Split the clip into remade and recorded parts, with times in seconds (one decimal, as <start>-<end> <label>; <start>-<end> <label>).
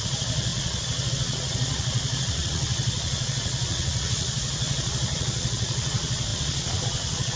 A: 0.0-7.4 remade